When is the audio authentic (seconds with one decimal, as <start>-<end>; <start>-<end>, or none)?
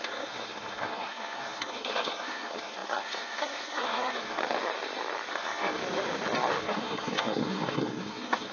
4.4-5.3; 5.8-6.6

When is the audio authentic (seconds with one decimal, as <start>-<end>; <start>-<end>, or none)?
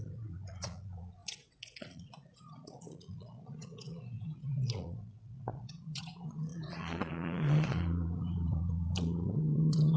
none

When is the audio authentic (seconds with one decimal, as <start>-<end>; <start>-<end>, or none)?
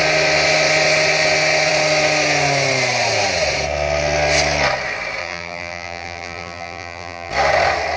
0.0-5.2; 7.3-8.0